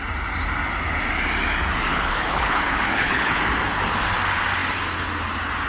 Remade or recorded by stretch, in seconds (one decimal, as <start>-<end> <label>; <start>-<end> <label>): 0.0-1.9 recorded; 1.9-3.4 remade; 3.4-5.7 recorded